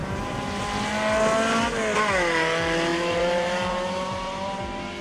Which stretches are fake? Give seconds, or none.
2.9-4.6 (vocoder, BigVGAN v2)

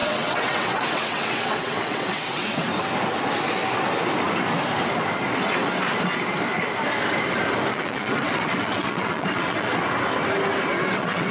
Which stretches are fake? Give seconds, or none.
0.0-2.7 (vocoder, WaveNeXt); 7.7-9.7; 10.7-11.3

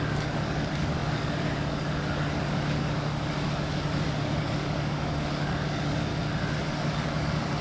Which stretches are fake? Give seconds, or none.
0.0-6.1 (codec, DAC); 6.6-7.6

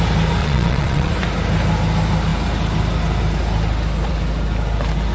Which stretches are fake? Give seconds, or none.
0.4-1.1 (vocoder, WaveNeXt)